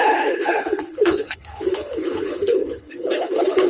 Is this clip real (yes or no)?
no